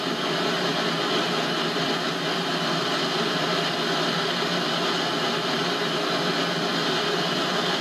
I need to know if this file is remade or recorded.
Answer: recorded